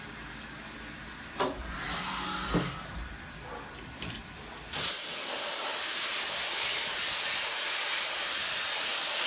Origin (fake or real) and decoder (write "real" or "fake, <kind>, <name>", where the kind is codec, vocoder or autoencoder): fake, vocoder, BigVGAN v2